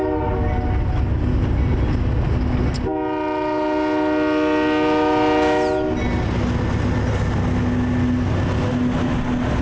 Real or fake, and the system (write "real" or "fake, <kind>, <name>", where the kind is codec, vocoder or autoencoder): real